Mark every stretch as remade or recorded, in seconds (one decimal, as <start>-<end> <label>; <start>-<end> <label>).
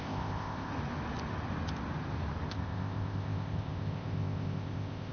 0.0-0.7 remade; 0.7-2.5 recorded; 2.5-5.1 remade